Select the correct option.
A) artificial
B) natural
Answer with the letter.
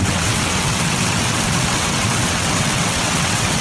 A